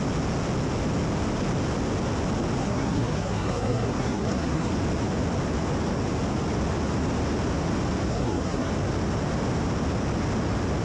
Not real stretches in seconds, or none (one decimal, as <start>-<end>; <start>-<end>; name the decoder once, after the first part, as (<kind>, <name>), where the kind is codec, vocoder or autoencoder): 2.6-4.7 (codec, SNAC); 8.1-8.7

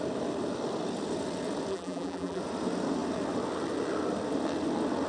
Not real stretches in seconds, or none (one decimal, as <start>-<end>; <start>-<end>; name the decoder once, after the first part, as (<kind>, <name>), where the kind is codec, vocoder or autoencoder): 1.7-2.4 (vocoder, BigVGAN v2)

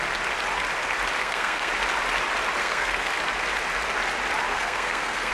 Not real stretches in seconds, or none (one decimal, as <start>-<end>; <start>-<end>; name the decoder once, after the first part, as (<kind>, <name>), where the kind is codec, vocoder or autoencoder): 1.2-1.7 (codec, SNAC); 2.6-3.2; 4.5-5.3

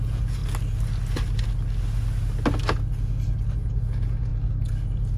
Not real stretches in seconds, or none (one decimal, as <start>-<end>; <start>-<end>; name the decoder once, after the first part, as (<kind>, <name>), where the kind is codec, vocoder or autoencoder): 0.0-0.4 (vocoder, Vocos); 3.5-4.3